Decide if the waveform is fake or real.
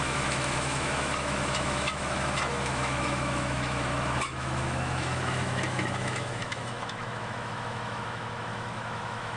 fake